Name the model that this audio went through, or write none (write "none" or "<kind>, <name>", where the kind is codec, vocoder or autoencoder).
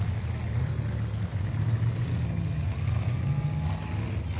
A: none